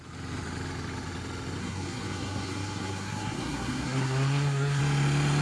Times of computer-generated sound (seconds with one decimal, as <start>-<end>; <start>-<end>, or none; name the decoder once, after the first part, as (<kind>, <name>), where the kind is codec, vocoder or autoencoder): 1.6-4.8 (codec, SNAC)